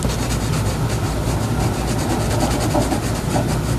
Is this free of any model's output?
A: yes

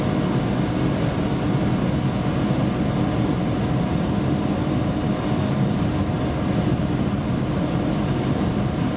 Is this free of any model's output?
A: yes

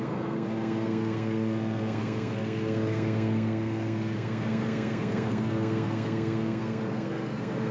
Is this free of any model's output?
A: no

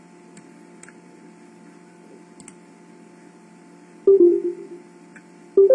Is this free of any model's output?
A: yes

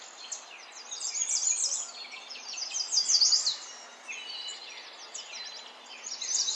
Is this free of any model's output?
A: yes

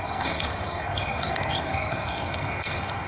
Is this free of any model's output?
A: no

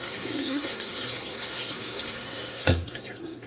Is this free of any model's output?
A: no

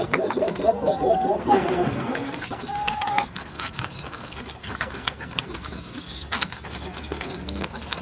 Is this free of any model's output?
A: no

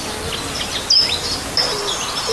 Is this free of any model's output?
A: yes